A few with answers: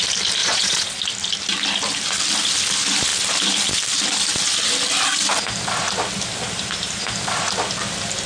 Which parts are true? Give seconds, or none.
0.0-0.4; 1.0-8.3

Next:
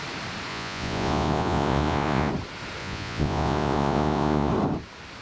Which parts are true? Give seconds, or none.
0.0-0.5; 2.3-2.8; 4.5-5.2

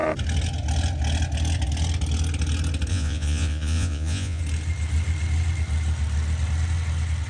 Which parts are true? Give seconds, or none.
0.0-2.9; 4.4-7.3

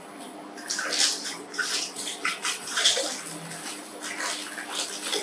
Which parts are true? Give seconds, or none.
0.0-1.1; 3.0-5.2

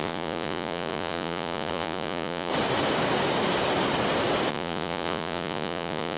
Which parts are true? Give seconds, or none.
2.5-4.5

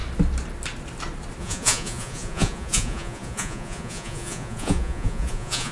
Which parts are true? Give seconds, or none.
0.0-1.4